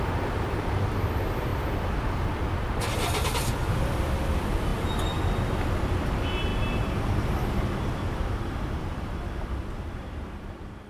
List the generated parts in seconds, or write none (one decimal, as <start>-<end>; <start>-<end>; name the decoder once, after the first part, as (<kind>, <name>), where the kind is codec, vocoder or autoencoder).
0.0-1.5 (vocoder, BigVGAN v2); 3.4-4.7; 5.8-6.5; 8.8-10.9